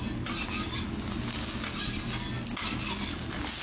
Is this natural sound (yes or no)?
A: yes